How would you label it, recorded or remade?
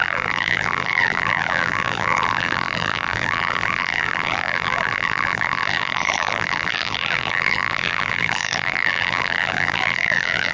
remade